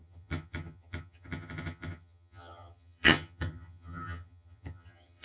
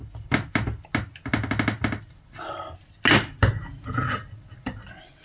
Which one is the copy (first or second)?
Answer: first